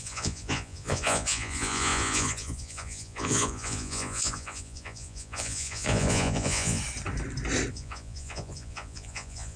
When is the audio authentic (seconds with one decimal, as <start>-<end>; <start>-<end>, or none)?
6.8-7.7